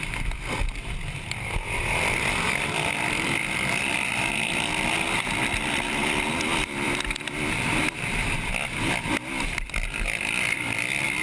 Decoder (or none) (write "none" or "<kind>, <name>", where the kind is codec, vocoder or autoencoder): vocoder, BigVGAN v2